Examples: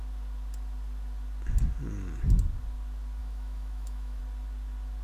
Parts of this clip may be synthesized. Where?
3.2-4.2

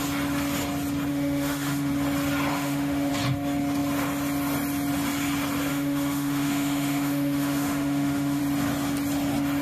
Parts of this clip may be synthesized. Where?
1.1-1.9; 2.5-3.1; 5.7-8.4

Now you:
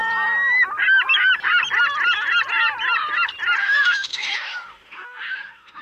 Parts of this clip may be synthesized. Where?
3.6-5.8

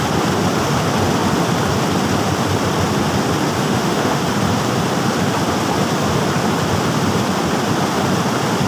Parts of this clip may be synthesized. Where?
3.6-4.2

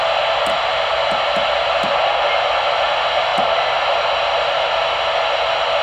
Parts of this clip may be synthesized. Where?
none

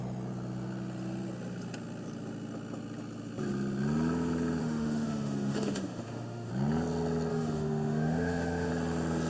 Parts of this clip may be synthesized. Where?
4.6-6.5; 7.3-8.7

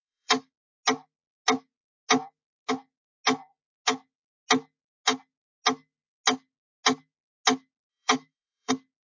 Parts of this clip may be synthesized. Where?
0.0-0.5; 7.9-8.7

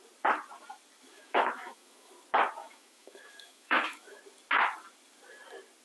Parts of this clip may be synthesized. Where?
1.1-2.1; 2.6-4.2